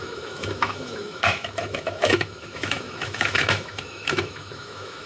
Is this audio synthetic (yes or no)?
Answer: yes